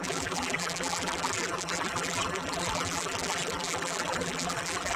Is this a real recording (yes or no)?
no